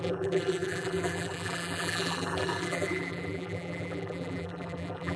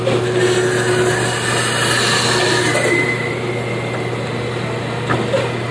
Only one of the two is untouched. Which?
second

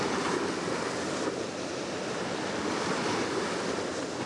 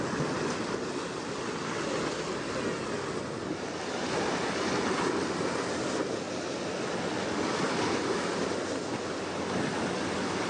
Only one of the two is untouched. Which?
second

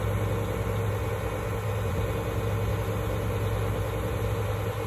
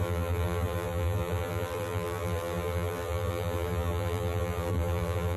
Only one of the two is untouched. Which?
first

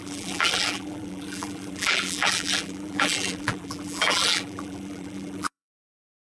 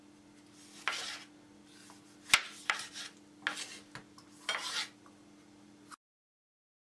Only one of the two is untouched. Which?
second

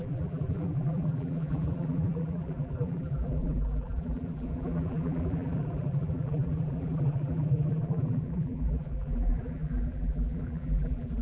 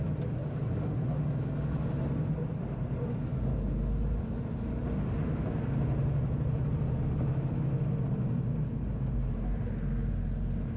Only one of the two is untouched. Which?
second